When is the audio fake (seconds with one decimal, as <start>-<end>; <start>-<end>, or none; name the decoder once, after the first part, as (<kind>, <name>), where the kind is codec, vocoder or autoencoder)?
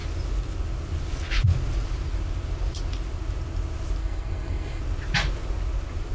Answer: 4.0-4.8 (codec, SNAC)